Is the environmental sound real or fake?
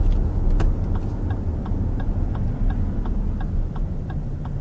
real